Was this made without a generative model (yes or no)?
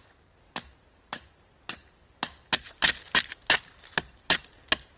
yes